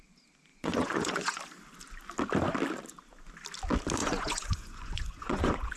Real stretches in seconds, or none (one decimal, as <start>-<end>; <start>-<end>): 0.0-0.5; 1.4-4.0